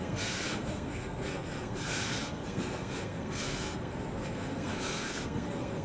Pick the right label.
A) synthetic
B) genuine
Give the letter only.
A